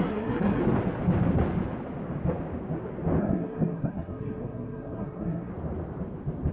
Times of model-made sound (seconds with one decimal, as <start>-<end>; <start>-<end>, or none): 0.0-0.6; 3.2-5.5